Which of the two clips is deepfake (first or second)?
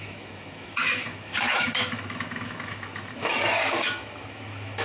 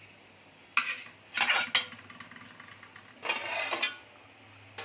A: first